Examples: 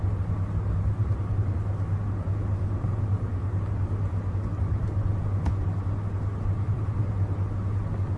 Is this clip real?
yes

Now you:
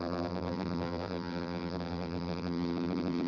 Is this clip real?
no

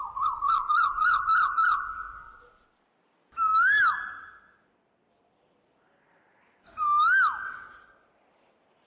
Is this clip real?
yes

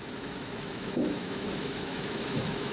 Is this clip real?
no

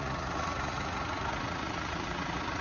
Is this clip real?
no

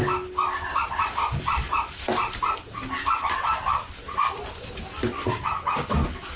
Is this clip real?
yes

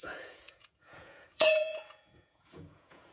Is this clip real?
no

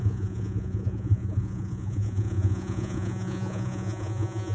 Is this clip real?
no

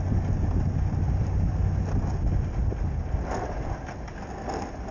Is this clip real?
yes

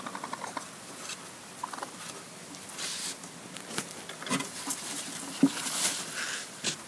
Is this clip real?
yes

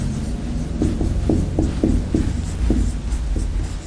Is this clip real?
yes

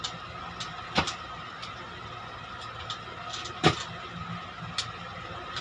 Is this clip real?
yes